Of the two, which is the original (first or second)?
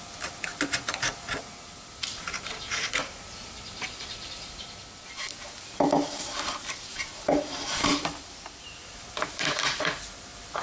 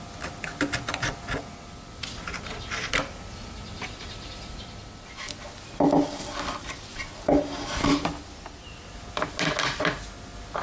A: second